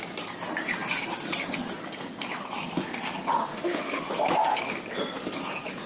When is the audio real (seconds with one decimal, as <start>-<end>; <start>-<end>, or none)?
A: 0.0-3.4; 4.0-5.9